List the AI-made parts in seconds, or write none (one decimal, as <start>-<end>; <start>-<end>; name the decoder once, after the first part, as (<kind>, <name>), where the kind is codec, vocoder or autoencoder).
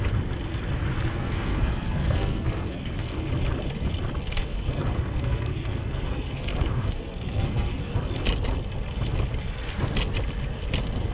1.1-3.3 (codec, SNAC); 4.4-8.1